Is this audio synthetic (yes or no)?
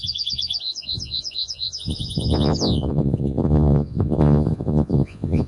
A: yes